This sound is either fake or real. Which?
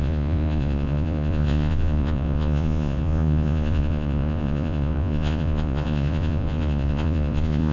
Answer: fake